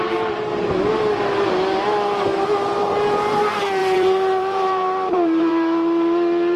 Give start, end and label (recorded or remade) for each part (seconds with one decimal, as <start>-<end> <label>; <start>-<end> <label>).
0.0-3.8 recorded; 3.8-6.6 remade